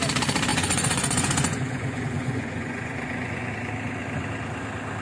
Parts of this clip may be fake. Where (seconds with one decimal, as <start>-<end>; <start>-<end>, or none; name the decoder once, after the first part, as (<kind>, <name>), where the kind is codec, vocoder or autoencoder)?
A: 0.5-3.5 (vocoder, Vocos)